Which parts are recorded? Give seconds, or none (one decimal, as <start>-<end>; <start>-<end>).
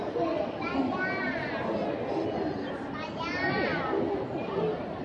0.0-5.0